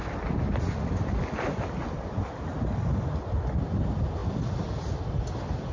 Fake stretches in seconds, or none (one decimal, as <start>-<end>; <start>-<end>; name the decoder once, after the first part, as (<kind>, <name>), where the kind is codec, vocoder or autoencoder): none